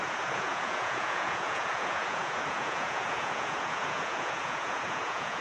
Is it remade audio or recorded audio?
remade